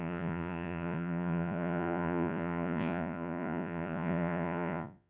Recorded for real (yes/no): no